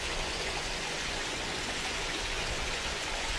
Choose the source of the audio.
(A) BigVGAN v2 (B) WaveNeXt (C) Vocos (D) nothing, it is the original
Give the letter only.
C